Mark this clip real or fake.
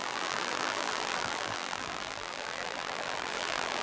fake